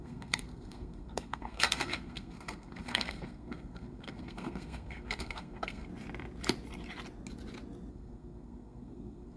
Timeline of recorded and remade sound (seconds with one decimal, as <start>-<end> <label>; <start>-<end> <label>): 0.0-5.9 remade; 5.9-7.9 recorded; 7.9-9.4 remade